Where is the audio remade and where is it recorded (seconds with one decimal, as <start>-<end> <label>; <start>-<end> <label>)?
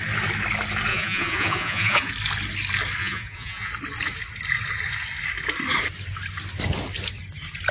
0.0-0.9 recorded; 0.9-2.1 remade; 2.1-3.0 recorded; 3.0-3.7 remade; 3.7-7.7 recorded